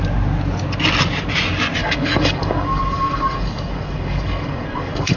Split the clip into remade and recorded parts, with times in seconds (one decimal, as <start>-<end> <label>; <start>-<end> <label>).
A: 0.0-1.8 recorded; 1.8-5.2 remade